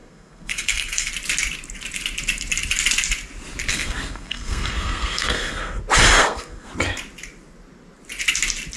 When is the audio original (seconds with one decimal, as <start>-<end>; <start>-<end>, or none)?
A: 1.1-3.7; 5.8-6.2; 6.7-8.8